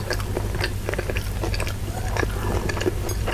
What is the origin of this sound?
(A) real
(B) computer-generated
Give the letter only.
A